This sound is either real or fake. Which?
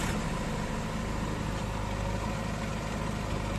real